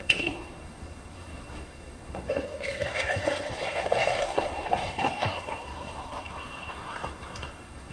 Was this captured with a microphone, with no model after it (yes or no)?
no